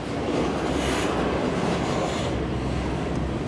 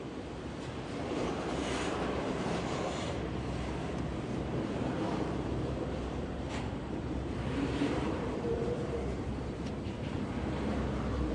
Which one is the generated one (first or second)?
second